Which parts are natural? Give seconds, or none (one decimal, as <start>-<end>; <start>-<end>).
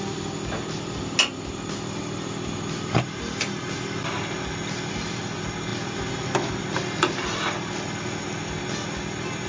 0.0-9.5